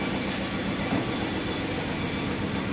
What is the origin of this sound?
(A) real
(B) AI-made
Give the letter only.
A